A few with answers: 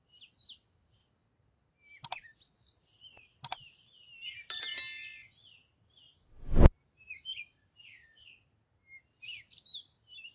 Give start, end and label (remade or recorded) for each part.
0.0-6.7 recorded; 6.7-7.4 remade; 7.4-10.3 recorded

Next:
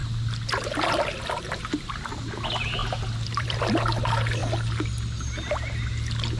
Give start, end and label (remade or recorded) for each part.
0.0-2.8 recorded; 2.8-3.6 remade; 3.6-6.4 recorded

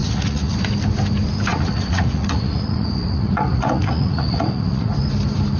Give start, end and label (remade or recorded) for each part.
0.0-0.7 remade; 0.7-1.5 recorded; 1.5-4.9 remade; 4.9-5.6 recorded

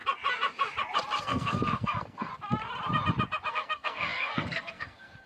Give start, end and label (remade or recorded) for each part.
0.0-1.2 recorded; 1.2-2.3 remade; 2.3-3.5 recorded; 3.5-5.3 remade

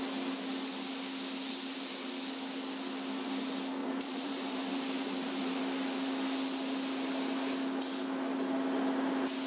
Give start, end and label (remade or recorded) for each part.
0.0-3.8 recorded; 3.8-5.6 remade; 5.6-9.5 recorded

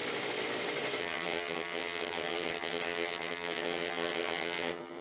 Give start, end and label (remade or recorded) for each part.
0.0-1.0 recorded; 1.0-5.0 remade